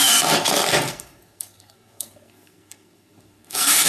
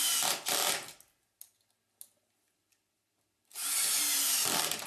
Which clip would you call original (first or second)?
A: second